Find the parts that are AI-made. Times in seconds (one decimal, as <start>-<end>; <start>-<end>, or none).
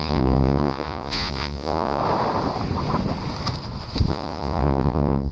0.0-2.0; 4.1-5.3